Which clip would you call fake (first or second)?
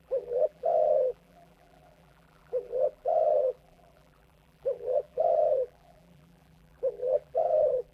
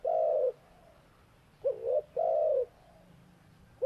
first